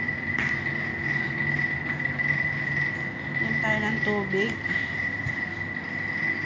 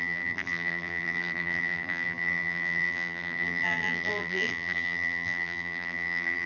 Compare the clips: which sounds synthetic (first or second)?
second